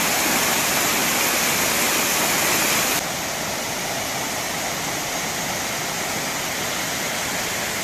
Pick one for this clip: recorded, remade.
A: recorded